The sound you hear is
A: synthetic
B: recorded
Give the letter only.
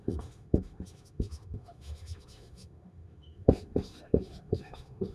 A